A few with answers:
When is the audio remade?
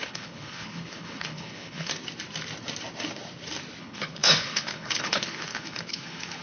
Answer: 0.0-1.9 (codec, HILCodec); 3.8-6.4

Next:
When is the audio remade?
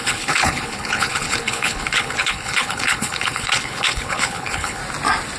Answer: 0.0-4.8 (codec, HILCodec)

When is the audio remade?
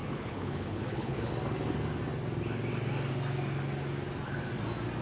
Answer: 0.0-1.3 (codec, HILCodec)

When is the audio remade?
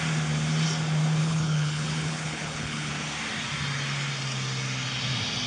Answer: 1.2-2.9 (codec, HILCodec)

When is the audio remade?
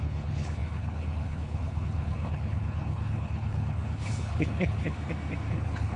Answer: 0.0-5.0 (codec, HILCodec); 5.5-6.0